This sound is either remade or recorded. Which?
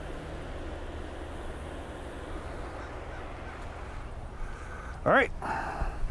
recorded